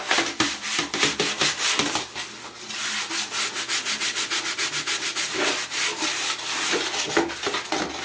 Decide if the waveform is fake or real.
real